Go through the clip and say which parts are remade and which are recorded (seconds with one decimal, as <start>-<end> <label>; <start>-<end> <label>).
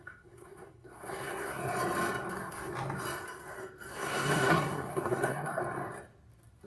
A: 0.0-1.6 remade; 1.6-2.3 recorded; 2.3-2.7 remade; 2.7-3.9 recorded; 3.9-5.6 remade; 5.6-6.7 recorded